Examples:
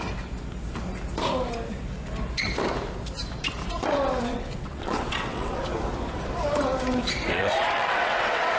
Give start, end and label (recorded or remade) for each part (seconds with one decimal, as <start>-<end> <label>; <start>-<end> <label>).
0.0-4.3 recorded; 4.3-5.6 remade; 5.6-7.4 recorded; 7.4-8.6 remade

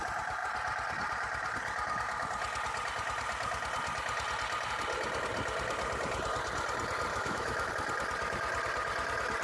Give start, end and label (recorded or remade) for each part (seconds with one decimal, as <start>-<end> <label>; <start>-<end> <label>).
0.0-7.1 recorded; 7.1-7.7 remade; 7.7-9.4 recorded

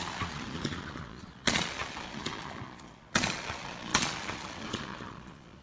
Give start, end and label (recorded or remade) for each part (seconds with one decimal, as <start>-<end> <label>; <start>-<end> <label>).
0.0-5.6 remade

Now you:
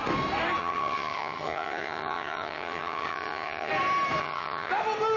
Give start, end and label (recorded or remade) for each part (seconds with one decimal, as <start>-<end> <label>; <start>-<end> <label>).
0.0-0.6 recorded; 0.6-3.7 remade; 3.7-4.2 recorded; 4.2-4.7 remade; 4.7-5.2 recorded